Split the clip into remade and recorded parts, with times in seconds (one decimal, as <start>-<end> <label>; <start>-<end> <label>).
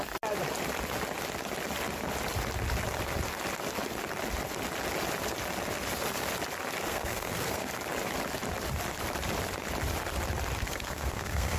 0.0-6.9 recorded; 6.9-7.7 remade; 7.7-10.6 recorded; 10.6-11.6 remade